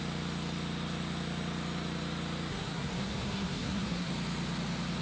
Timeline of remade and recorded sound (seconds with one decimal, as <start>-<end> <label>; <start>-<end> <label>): 0.0-2.5 recorded; 2.5-4.1 remade; 4.1-5.0 recorded